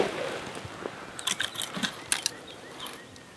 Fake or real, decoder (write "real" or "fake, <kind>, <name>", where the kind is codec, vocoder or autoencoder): real